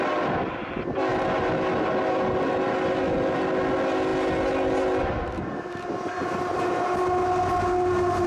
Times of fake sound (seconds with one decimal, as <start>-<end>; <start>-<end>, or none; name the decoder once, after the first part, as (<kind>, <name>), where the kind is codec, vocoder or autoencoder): none